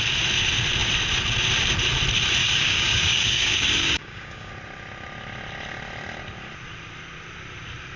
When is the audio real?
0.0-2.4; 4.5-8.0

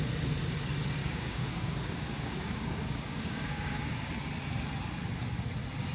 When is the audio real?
0.0-1.0; 4.1-5.9

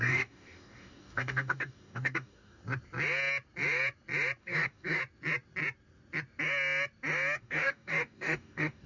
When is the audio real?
2.6-4.4; 5.0-7.4

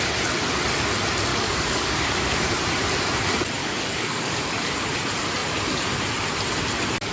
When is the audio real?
0.0-1.3; 2.5-3.6; 4.7-7.1